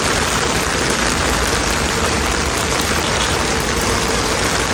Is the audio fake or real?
fake